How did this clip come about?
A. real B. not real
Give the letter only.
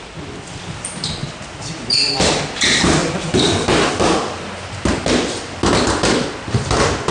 A